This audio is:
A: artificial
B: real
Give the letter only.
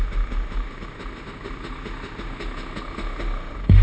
A